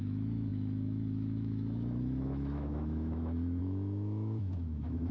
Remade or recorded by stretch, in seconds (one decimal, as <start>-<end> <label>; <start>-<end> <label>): 0.0-5.1 remade

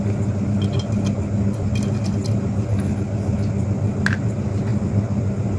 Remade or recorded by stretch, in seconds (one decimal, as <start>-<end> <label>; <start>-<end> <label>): 0.0-5.6 recorded

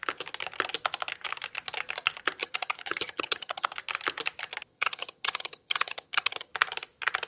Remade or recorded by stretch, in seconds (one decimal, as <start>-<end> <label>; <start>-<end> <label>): 0.0-2.4 recorded; 2.4-3.7 remade; 3.7-4.7 recorded; 4.7-6.5 remade; 6.5-7.3 recorded

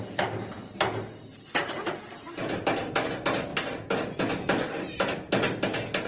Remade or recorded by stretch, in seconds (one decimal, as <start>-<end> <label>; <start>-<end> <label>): 0.0-6.1 recorded

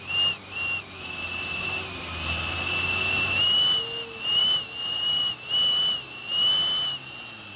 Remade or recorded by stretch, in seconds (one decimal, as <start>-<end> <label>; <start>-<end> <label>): 0.0-7.6 recorded

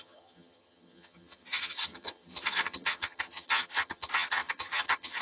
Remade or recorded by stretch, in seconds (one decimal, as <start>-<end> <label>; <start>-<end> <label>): 0.0-5.2 remade

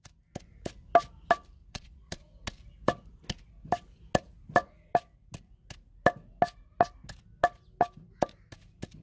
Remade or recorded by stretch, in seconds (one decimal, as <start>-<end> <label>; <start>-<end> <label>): 0.0-1.6 recorded; 1.6-2.2 remade; 2.2-9.0 recorded